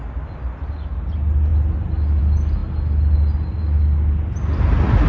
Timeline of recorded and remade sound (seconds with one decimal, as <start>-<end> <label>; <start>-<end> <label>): 0.0-5.1 recorded